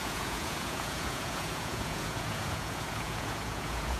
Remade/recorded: remade